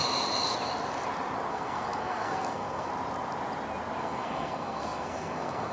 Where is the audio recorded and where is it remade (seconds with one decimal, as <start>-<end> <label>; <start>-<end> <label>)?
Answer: 0.0-1.5 recorded; 1.5-2.9 remade; 2.9-4.0 recorded; 4.0-5.7 remade